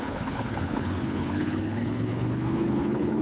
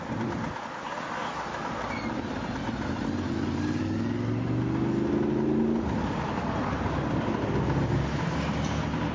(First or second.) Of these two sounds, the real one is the second